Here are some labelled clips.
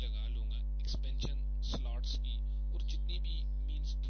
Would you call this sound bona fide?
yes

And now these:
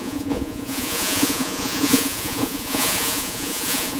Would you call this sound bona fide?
no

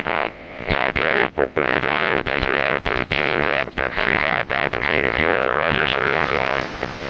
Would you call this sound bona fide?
no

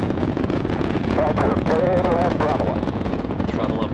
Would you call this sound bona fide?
no